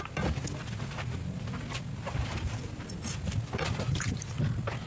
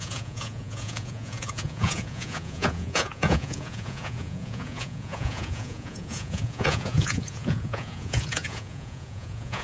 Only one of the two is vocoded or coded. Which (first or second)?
second